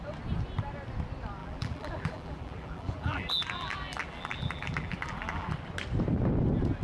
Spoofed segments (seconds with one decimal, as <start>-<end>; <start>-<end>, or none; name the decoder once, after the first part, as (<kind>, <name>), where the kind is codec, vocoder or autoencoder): 1.4-5.5 (vocoder, BigVGAN v2)